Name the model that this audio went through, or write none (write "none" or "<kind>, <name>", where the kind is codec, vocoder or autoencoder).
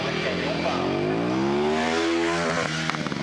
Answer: none